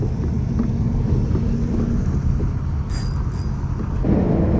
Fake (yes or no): no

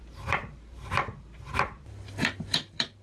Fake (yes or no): yes